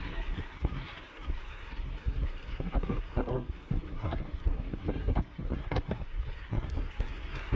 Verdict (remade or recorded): remade